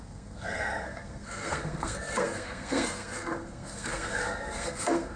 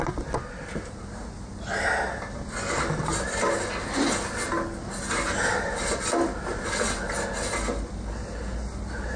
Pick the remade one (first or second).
first